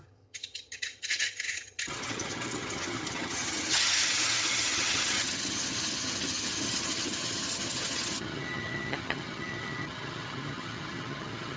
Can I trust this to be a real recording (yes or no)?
no